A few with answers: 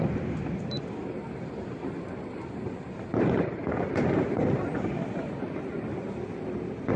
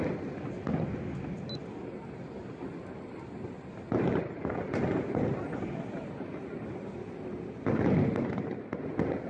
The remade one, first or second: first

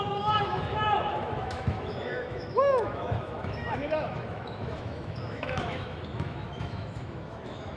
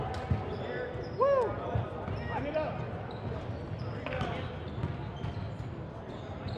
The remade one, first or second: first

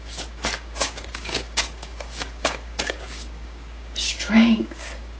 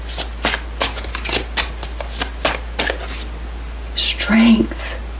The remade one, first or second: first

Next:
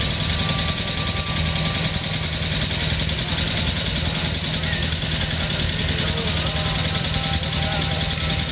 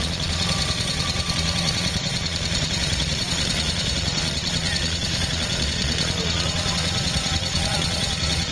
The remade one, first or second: second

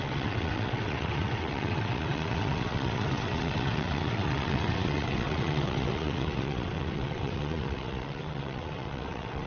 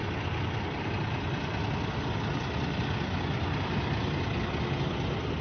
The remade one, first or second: first